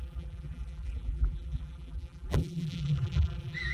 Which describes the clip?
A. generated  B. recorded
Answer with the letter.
A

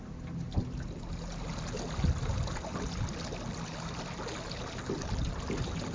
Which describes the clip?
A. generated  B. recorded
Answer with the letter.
B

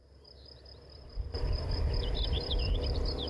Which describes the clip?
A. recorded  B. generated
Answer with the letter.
B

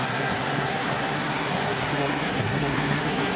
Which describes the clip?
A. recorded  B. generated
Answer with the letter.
B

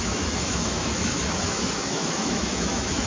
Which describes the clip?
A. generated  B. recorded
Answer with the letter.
A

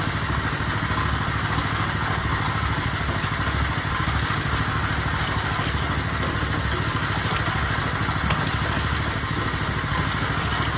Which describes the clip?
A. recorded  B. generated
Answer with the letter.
A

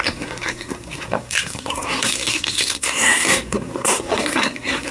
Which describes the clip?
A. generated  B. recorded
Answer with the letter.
A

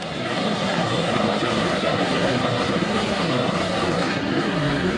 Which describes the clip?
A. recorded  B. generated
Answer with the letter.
B